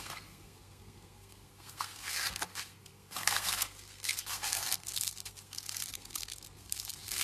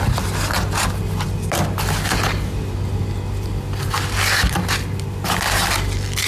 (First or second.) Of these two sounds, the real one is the second